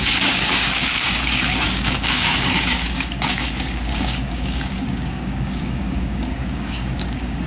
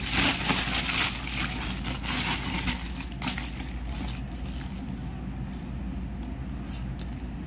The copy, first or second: first